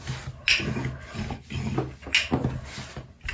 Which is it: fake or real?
real